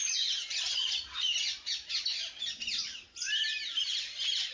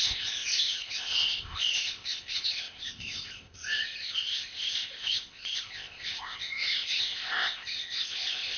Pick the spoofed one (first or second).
second